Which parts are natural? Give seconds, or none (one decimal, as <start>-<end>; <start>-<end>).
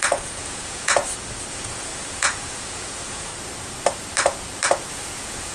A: 1.0-1.5; 3.3-4.9